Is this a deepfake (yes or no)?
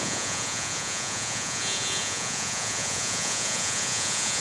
yes